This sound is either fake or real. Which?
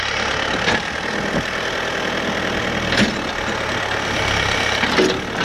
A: fake